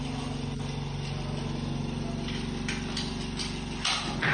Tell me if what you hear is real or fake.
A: real